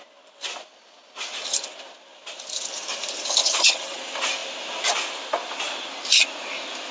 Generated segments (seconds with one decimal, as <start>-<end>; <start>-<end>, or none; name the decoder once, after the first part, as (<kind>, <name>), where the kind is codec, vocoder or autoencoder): 3.4-4.0 (vocoder, HiFi-GAN)

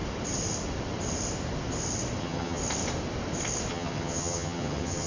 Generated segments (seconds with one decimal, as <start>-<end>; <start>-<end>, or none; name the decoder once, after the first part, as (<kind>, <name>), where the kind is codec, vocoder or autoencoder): 2.2-2.6 (vocoder, HiFi-GAN); 3.7-5.1

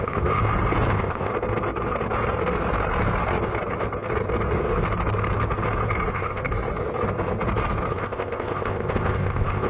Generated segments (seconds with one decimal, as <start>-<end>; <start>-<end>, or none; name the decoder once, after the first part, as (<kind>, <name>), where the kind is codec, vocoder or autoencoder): 0.0-0.4 (codec, ZipCodec); 0.9-1.3; 6.1-6.5; 7.9-9.7

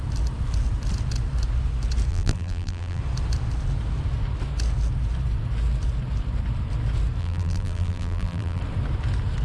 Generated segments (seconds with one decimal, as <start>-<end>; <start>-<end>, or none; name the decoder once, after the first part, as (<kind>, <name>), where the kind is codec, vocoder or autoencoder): 2.1-3.0 (vocoder, BigVGAN v2); 7.2-8.6